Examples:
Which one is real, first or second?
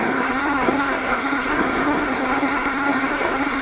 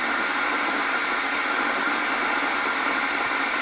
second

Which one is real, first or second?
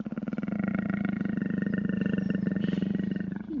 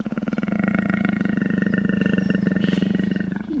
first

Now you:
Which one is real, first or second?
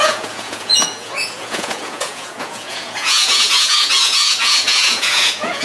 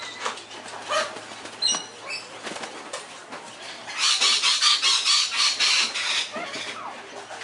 second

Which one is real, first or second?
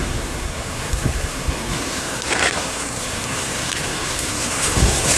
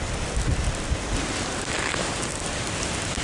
second